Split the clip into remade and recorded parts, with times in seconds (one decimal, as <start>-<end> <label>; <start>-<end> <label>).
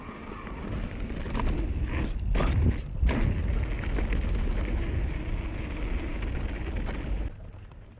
0.0-8.0 recorded